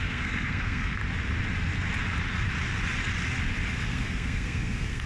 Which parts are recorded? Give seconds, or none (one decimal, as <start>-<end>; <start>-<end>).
1.0-3.9